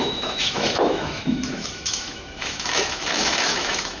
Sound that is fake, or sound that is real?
fake